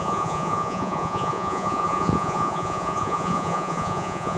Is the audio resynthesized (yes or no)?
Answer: yes